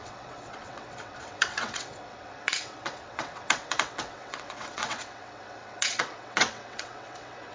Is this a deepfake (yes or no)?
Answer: yes